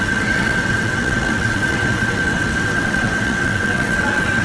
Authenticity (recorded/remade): remade